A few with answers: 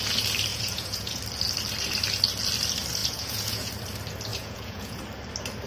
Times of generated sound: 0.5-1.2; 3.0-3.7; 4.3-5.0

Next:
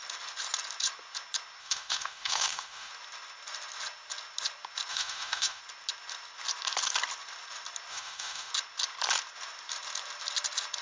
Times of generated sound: 1.6-2.9; 4.9-5.6; 7.9-8.5

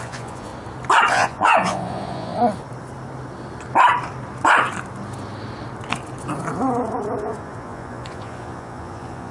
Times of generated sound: 0.0-0.5; 1.1-2.3; 7.2-9.3